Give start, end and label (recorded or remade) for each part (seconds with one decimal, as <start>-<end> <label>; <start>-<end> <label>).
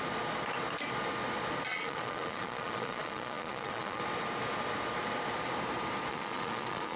0.0-1.7 recorded; 1.7-4.0 remade; 4.0-6.1 recorded; 6.1-7.0 remade